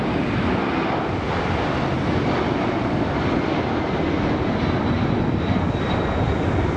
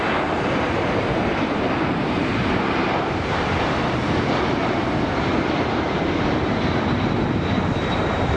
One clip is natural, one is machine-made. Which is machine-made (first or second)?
second